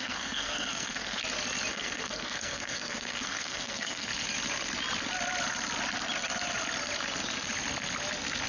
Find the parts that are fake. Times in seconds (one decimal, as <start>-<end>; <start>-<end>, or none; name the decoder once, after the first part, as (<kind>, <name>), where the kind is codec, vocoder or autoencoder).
0.0-1.2 (codec, SNAC); 1.7-4.1